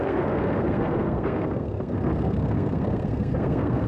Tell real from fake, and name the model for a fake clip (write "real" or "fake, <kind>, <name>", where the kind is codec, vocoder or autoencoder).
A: fake, codec, SNAC